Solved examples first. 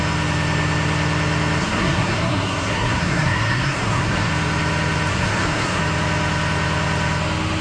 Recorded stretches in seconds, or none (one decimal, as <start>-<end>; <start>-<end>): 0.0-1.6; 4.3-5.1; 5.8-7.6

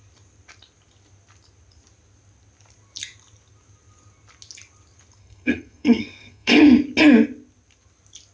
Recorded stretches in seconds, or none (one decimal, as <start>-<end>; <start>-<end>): 0.0-5.2; 6.6-8.3

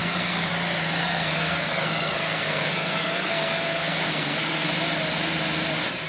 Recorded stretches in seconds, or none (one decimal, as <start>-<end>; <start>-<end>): 0.5-1.0; 4.7-6.1

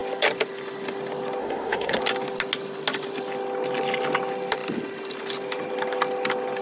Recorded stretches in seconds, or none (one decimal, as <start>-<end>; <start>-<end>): 0.0-1.4; 2.0-6.6

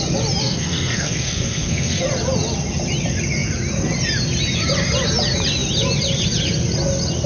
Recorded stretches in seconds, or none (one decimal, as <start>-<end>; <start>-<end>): 0.0-0.4; 2.0-7.3

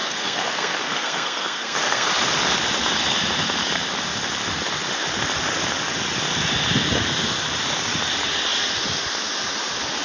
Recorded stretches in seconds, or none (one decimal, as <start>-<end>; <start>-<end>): 2.1-10.0

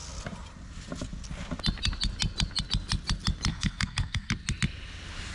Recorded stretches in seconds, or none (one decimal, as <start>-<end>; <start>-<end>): 0.0-3.5; 4.3-5.3